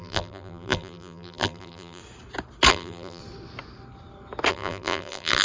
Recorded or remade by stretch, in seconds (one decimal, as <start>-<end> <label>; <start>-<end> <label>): 0.0-2.0 remade; 2.0-2.7 recorded; 2.7-3.2 remade; 3.2-4.5 recorded; 4.5-5.4 remade